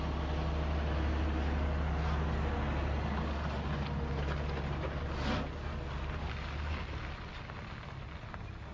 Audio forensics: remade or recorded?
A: recorded